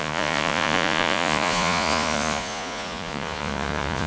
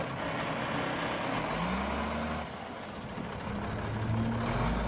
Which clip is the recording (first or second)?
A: second